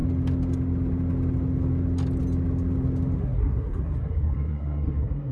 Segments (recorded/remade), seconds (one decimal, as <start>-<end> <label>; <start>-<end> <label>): 0.0-3.2 recorded; 3.2-5.3 remade